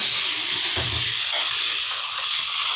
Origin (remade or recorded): recorded